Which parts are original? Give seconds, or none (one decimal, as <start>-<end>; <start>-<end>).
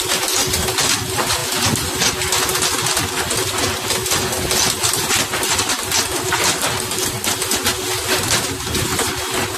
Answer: 0.0-1.4; 2.1-9.6